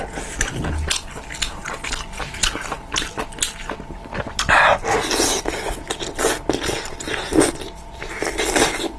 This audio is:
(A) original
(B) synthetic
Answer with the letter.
A